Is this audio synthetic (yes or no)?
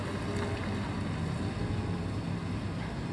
no